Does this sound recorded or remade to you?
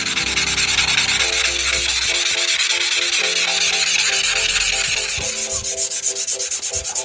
recorded